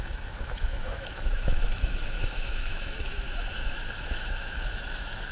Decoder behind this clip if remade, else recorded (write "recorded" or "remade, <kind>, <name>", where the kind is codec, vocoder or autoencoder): remade, autoencoder, DAC-VAE